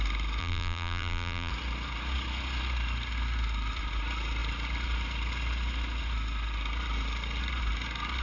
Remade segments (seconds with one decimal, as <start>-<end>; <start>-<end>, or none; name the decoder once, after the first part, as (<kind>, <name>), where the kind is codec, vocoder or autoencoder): 0.4-1.5 (vocoder, BigVGAN v2)